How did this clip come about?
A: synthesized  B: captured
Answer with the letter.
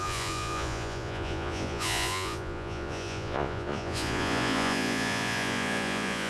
A